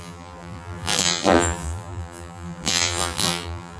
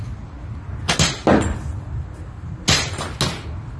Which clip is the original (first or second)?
second